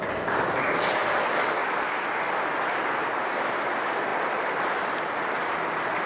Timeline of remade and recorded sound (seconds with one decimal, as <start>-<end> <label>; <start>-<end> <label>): 0.0-6.1 recorded